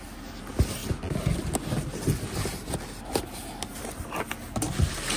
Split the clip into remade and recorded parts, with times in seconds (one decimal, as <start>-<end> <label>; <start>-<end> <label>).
0.0-5.2 recorded